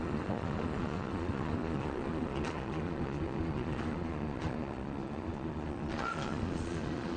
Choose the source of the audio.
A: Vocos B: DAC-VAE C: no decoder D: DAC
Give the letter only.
A